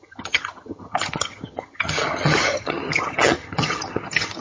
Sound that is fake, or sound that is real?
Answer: fake